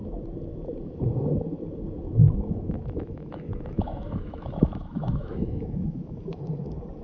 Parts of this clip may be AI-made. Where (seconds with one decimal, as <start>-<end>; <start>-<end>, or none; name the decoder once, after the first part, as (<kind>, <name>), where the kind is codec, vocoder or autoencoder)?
2.2-6.4 (autoencoder, DAC-VAE)